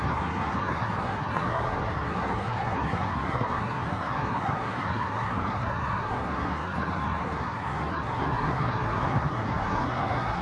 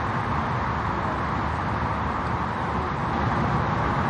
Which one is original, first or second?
second